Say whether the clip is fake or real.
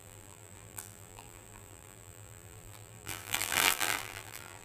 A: fake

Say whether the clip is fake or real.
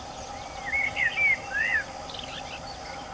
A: real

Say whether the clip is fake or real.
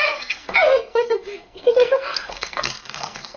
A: fake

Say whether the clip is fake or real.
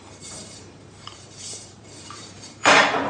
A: fake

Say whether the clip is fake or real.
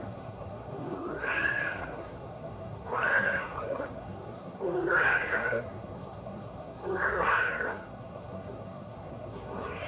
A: fake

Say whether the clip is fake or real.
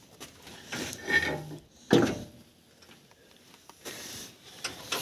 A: real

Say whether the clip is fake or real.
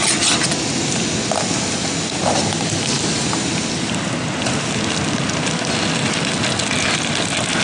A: real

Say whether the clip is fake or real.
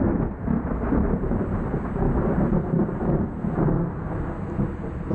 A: real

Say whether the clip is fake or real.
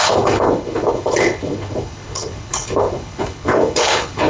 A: fake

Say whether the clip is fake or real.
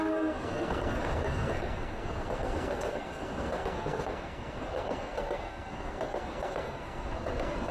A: fake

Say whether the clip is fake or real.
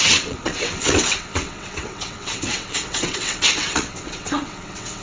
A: fake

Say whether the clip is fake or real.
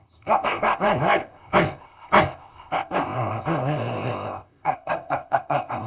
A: fake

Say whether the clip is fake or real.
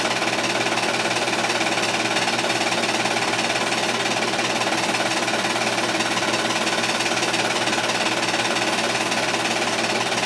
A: real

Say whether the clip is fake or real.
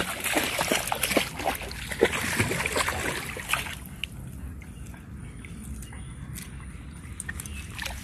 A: real